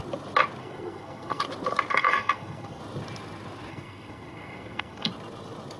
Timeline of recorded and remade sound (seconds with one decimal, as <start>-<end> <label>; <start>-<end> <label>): 0.0-0.6 recorded; 0.6-1.4 remade; 1.4-1.9 recorded; 1.9-2.8 remade; 2.8-3.7 recorded; 3.7-5.1 remade; 5.1-5.8 recorded